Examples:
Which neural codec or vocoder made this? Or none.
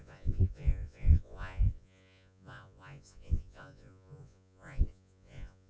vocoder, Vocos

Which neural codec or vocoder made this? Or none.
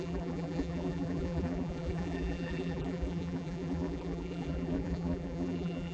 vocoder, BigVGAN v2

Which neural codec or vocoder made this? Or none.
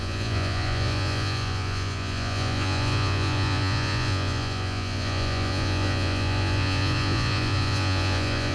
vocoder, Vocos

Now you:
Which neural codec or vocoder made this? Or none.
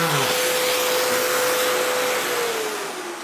none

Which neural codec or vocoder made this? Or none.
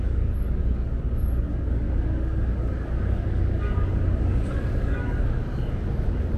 codec, DAC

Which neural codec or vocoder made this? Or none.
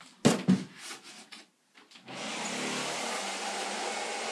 none